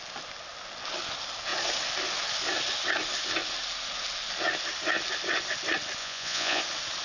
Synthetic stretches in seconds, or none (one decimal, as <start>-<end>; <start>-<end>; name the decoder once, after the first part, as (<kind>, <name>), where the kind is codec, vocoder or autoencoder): 6.0-6.6 (vocoder, Vocos)